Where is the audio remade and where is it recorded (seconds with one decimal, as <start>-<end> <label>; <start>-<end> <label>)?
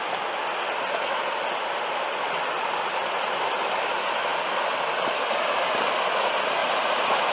0.0-6.6 recorded; 6.6-7.3 remade